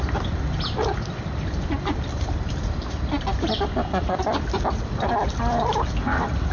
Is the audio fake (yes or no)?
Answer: yes